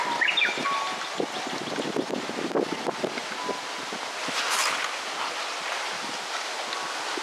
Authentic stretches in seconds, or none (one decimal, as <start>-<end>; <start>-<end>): 0.0-7.2